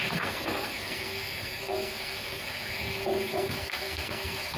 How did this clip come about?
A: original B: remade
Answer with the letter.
B